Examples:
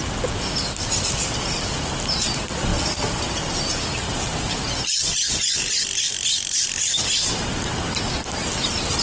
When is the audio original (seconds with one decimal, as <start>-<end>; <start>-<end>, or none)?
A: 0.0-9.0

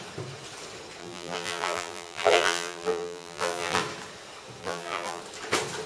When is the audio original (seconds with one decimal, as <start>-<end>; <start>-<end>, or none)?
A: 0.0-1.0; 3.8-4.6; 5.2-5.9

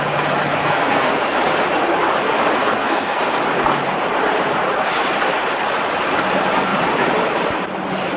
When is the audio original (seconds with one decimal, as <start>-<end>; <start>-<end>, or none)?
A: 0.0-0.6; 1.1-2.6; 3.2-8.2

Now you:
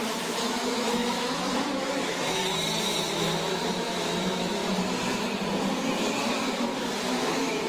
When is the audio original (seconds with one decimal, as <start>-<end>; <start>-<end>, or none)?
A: 2.4-3.1; 4.6-6.2

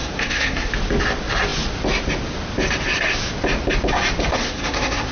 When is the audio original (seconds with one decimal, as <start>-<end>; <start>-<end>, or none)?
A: 0.7-4.3

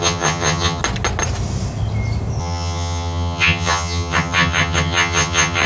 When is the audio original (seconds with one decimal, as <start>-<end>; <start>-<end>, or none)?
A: 0.8-2.4

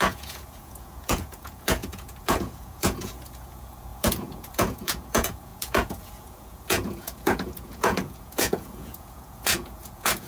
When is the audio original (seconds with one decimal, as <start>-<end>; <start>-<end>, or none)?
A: none